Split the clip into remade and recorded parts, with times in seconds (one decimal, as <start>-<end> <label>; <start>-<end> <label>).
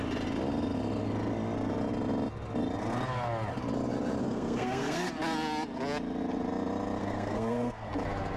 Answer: 0.0-4.2 recorded; 4.2-5.1 remade; 5.1-7.0 recorded; 7.0-7.9 remade; 7.9-8.4 recorded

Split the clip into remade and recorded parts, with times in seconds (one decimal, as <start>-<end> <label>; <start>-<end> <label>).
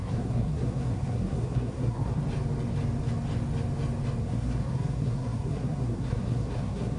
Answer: 0.0-2.2 remade; 2.2-4.2 recorded; 4.2-7.0 remade